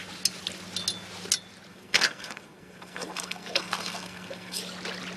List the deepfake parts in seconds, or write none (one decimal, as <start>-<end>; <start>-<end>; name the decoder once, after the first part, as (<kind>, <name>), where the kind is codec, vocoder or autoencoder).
1.7-4.6 (codec, SNAC)